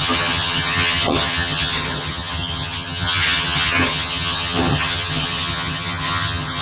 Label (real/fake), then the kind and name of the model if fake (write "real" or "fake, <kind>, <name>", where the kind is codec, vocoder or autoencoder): fake, vocoder, HiFi-GAN